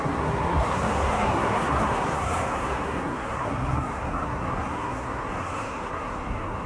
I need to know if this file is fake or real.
fake